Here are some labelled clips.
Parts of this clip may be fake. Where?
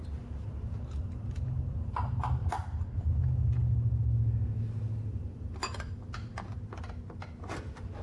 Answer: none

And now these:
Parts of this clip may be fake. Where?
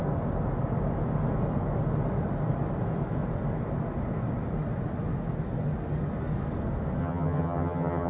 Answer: 7.0-8.1 (vocoder, HiFi-GAN)